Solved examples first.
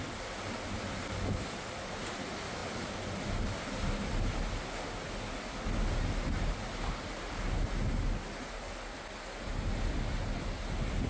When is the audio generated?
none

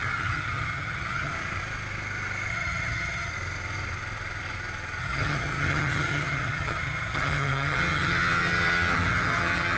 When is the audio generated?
0.0-1.3 (vocoder, HiFi-GAN); 2.5-3.3; 5.0-9.8